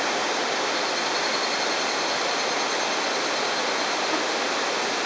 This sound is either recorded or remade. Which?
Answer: recorded